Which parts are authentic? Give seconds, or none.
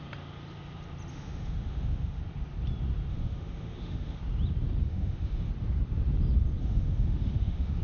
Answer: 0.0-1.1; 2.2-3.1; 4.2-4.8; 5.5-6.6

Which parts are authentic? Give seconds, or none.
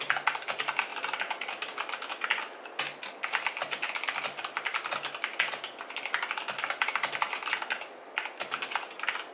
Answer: 0.0-9.3